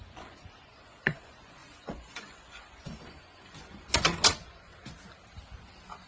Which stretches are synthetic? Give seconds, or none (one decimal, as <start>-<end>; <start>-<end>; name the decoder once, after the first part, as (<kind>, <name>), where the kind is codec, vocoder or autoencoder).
0.0-4.7 (vocoder, Vocos)

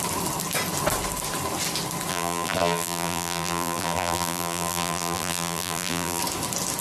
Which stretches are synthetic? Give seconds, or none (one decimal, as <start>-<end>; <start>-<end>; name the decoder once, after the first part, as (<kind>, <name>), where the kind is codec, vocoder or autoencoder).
2.1-6.2 (vocoder, BigVGAN v2)